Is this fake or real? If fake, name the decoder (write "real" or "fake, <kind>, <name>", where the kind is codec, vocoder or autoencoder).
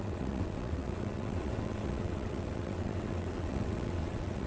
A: fake, vocoder, WaveNeXt